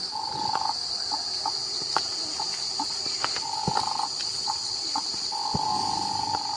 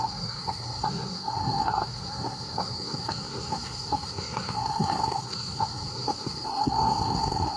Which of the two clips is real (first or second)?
first